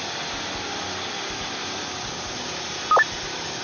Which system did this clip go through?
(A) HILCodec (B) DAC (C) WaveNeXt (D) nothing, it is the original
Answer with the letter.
D